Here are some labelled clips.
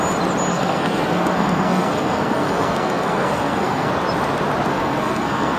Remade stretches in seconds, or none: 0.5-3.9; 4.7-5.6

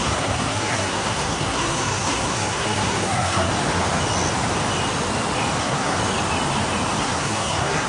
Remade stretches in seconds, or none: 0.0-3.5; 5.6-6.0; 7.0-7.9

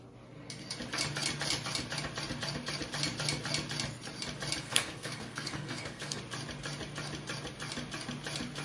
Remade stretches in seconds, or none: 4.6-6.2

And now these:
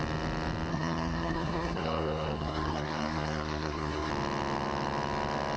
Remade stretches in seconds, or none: 0.7-4.1

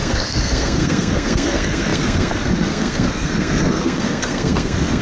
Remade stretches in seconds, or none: 0.0-5.0

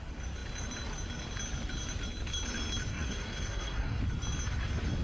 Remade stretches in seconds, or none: 2.9-4.0

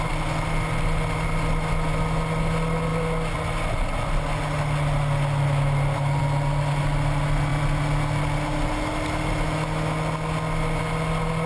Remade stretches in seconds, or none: none

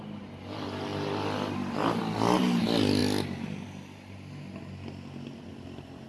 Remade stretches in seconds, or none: none